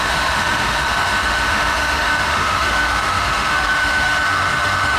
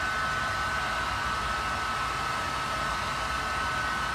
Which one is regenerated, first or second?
first